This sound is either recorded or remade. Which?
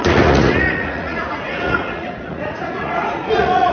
remade